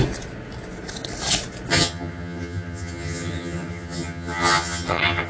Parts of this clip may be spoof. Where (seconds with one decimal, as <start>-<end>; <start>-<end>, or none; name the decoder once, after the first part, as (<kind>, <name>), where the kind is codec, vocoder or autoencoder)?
1.7-5.3 (vocoder, HiFi-GAN)

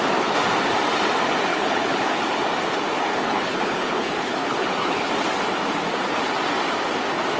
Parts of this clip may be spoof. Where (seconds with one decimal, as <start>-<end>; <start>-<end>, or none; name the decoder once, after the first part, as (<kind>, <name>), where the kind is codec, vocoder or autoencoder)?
1.5-2.2 (codec, HILCodec); 3.1-5.1